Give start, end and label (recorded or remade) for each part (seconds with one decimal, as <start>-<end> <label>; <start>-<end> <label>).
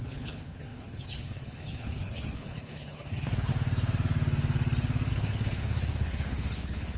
0.0-3.5 remade; 3.5-5.1 recorded; 5.1-7.0 remade